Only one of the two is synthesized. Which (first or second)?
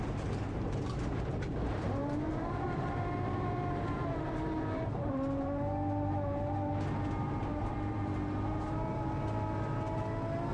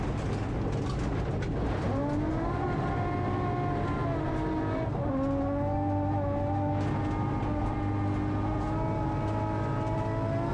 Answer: first